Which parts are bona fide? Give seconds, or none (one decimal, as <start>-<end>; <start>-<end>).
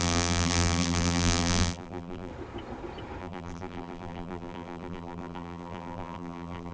2.3-3.2